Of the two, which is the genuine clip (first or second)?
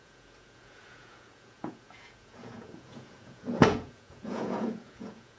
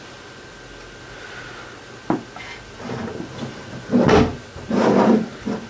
second